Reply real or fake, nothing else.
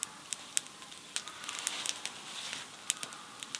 real